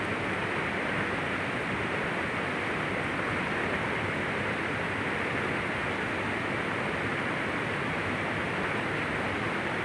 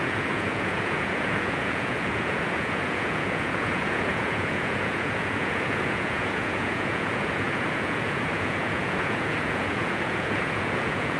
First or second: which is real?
first